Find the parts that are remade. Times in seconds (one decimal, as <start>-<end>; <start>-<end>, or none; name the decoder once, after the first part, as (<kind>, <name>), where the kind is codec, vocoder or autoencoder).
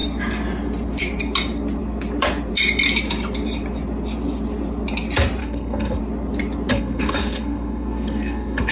5.4-6.0 (codec, SNAC); 6.7-8.7